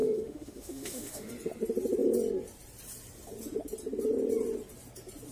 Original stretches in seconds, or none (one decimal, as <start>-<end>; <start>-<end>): 1.3-5.3